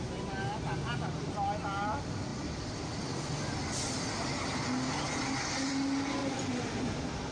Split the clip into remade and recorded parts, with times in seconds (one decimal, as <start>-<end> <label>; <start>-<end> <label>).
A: 0.0-6.2 recorded; 6.2-6.8 remade; 6.8-7.3 recorded